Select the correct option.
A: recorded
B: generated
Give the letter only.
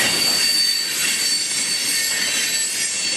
A